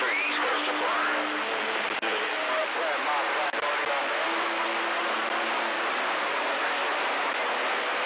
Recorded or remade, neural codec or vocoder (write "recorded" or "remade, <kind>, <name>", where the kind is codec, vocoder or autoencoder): recorded